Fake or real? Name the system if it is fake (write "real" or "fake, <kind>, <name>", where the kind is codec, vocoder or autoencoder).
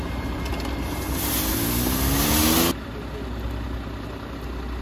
real